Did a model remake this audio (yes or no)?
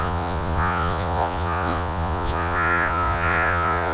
yes